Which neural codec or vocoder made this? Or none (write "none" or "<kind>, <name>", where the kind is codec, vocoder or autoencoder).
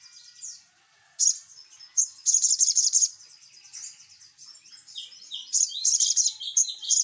none